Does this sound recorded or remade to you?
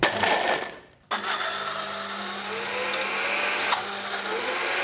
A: recorded